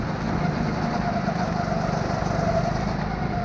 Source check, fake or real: real